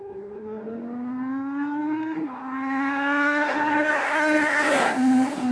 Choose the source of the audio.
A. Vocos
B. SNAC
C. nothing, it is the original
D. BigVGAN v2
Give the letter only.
B